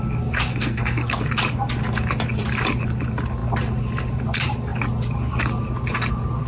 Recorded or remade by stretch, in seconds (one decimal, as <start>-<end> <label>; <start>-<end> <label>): 0.0-0.5 recorded; 0.5-1.3 remade; 1.3-6.5 recorded